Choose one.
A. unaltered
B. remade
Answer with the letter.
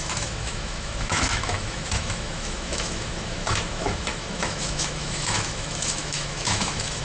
B